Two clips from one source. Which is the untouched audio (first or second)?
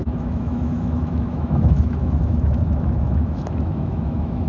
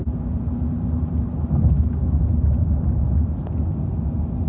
second